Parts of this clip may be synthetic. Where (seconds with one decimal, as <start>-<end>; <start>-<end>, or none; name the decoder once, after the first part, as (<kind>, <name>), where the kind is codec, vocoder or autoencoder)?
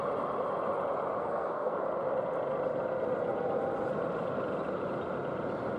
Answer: 1.2-1.8 (codec, SNAC)